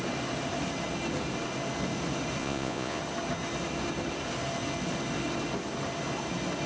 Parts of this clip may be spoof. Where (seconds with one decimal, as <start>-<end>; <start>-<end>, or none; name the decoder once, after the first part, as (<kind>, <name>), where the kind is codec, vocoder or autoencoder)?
2.4-3.0 (vocoder, Vocos)